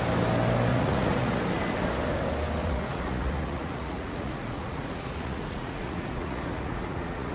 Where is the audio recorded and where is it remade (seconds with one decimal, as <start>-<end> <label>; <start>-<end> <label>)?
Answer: 0.0-0.7 recorded; 0.7-1.4 remade; 1.4-2.6 recorded; 2.6-7.3 remade